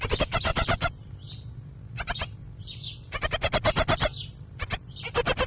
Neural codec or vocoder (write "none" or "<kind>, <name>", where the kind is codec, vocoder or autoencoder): none